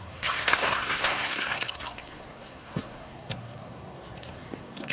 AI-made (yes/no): yes